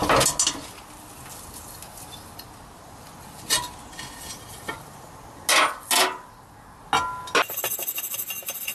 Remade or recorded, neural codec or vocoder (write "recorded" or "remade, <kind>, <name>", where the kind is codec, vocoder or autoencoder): recorded